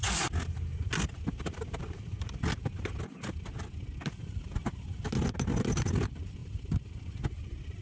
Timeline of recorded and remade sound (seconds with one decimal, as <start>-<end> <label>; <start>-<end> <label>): 0.0-7.8 recorded